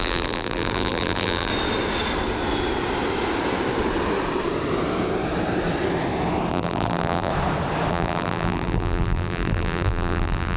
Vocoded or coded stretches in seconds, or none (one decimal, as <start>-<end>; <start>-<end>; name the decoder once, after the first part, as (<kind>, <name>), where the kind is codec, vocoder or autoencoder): 0.0-1.5 (vocoder, BigVGAN v2); 6.5-7.3; 7.9-10.6